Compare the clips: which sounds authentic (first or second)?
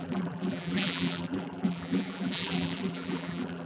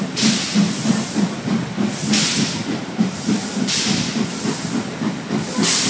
second